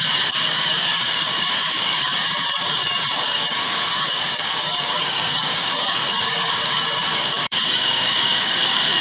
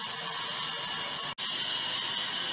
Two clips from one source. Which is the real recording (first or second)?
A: second